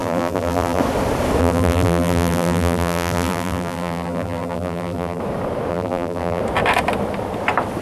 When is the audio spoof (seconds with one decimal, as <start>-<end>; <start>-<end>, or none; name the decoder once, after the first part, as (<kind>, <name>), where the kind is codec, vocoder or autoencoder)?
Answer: 0.0-0.8 (vocoder, BigVGAN v2); 1.4-5.2; 5.7-6.4